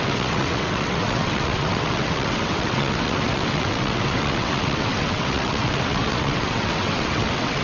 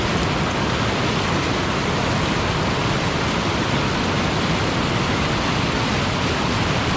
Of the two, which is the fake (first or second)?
first